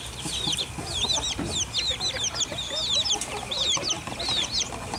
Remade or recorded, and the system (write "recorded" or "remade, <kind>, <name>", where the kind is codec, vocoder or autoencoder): recorded